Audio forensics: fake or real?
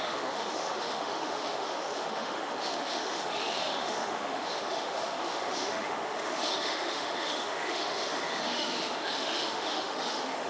fake